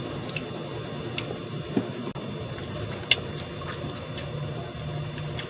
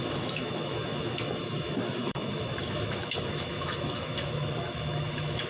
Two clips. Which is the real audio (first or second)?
first